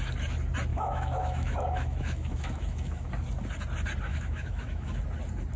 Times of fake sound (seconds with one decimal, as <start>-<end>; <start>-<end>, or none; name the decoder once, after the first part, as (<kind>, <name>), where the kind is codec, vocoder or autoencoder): 0.7-3.1 (autoencoder, DAC-VAE); 4.1-5.0